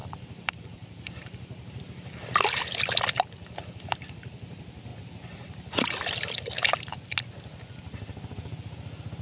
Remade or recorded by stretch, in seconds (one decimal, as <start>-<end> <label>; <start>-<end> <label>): 0.0-1.8 remade; 1.8-9.2 recorded